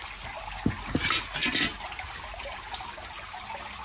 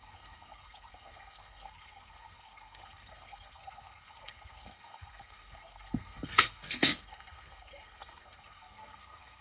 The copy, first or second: second